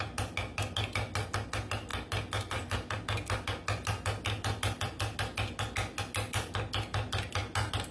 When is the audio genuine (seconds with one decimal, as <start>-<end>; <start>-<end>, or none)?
0.0-7.9